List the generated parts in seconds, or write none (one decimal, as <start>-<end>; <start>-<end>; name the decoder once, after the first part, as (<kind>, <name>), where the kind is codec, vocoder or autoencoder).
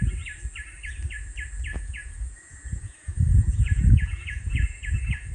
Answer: 1.7-5.3 (vocoder, Vocos)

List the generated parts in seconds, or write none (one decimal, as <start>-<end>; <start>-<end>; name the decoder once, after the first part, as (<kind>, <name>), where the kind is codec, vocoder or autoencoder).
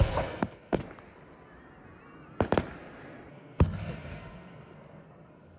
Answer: 0.0-0.8 (codec, SNAC); 3.3-5.6